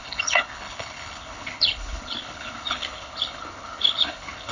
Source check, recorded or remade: remade